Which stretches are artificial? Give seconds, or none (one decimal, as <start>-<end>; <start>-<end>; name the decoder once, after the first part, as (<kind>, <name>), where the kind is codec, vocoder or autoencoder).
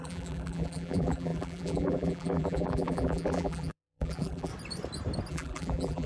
0.0-4.5 (vocoder, BigVGAN v2); 5.3-6.1